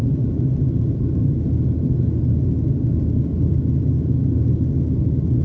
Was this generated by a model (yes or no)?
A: no